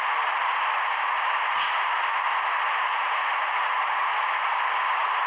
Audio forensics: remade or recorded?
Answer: recorded